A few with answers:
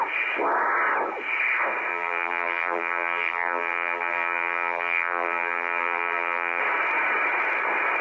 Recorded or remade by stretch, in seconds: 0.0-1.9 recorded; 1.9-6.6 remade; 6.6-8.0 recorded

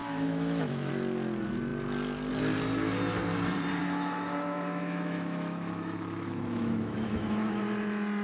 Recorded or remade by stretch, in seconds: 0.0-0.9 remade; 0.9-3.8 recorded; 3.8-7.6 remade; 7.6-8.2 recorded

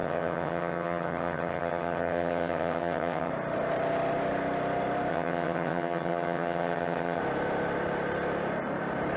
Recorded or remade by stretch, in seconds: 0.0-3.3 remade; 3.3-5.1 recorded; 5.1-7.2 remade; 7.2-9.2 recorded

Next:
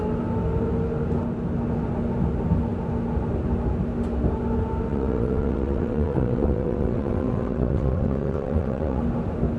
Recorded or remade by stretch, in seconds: 0.0-4.9 recorded; 4.9-9.0 remade; 9.0-9.6 recorded

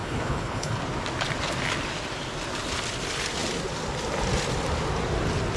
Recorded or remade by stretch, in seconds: 0.0-0.8 remade; 0.8-5.6 recorded

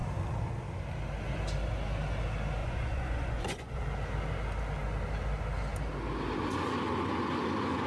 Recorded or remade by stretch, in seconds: 0.0-2.6 recorded; 2.6-3.8 remade; 3.8-7.9 recorded

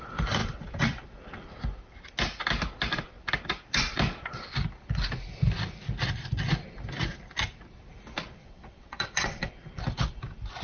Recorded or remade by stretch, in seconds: 0.0-8.4 recorded; 8.4-9.5 remade; 9.5-10.6 recorded